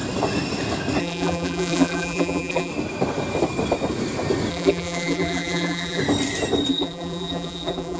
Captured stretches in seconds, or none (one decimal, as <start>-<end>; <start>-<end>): 0.0-1.0; 2.7-4.5; 6.0-6.7